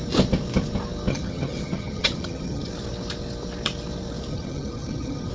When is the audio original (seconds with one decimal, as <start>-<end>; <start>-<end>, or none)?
0.0-1.1; 2.7-4.3